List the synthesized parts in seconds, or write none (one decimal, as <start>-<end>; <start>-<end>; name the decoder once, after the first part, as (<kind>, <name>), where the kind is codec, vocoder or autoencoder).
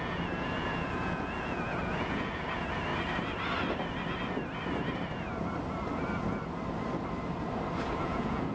0.0-2.9 (vocoder, Vocos); 7.8-8.5